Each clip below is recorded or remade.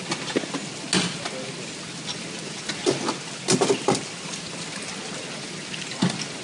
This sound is recorded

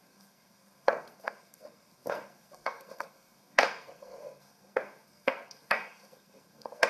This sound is remade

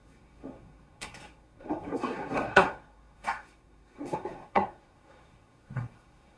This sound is remade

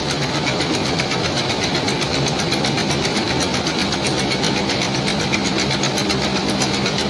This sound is recorded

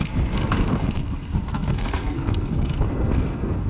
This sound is remade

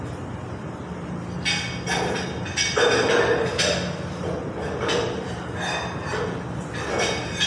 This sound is recorded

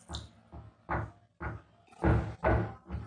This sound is recorded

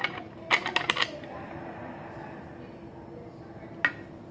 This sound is recorded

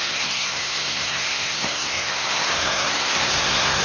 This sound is remade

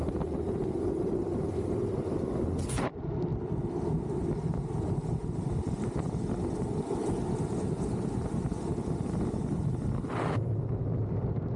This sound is recorded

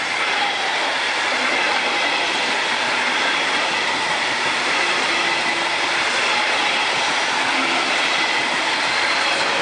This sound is recorded